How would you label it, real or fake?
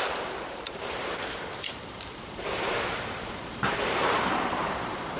fake